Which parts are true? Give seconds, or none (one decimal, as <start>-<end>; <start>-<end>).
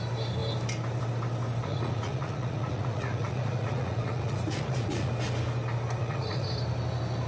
0.0-1.6; 5.1-6.0; 6.5-7.3